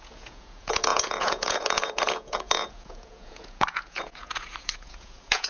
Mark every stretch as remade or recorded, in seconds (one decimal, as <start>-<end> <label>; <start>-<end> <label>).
0.0-5.5 remade

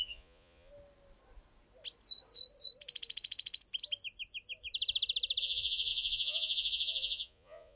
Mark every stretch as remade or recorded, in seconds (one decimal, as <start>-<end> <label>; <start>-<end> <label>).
0.0-0.7 remade; 0.7-5.4 recorded; 5.4-7.8 remade

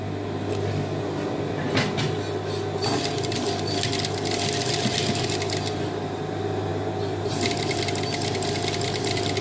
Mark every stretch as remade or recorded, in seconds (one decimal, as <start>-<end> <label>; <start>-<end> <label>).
0.0-9.4 recorded

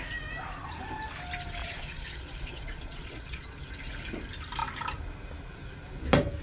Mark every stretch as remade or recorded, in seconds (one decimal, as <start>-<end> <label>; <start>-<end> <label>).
0.0-1.6 recorded; 1.6-3.6 remade; 3.6-6.4 recorded

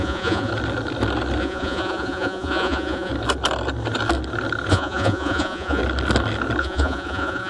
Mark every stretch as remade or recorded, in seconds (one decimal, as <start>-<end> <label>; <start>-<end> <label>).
0.0-0.5 remade; 0.5-1.4 recorded; 1.4-3.1 remade; 3.1-4.7 recorded; 4.7-5.8 remade; 5.8-6.6 recorded; 6.6-7.5 remade

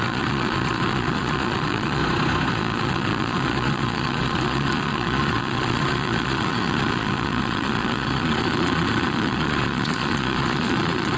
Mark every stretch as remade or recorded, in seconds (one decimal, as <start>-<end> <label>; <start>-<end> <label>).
0.0-2.0 remade; 2.0-2.5 recorded; 2.5-11.2 remade